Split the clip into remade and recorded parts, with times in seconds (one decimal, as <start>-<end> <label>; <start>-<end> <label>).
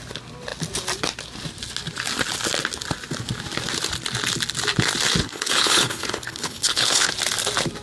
0.0-5.2 recorded; 5.2-7.1 remade; 7.1-7.8 recorded